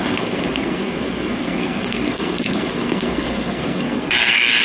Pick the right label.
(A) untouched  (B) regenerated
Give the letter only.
B